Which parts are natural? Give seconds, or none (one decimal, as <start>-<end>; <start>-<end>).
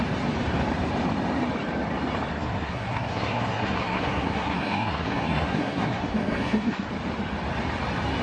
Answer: 0.0-2.3; 6.9-8.2